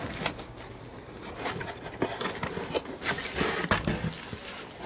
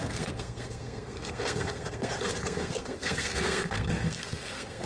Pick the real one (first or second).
first